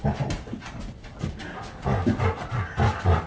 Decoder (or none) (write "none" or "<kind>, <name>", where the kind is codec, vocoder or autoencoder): none